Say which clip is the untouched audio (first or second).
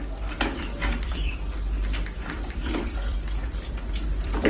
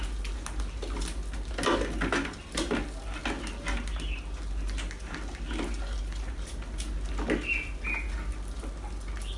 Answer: second